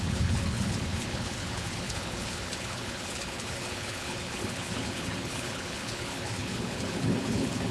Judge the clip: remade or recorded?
remade